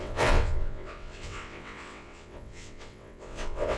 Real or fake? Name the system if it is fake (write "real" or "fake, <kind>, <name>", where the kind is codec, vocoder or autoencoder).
fake, vocoder, WaveNeXt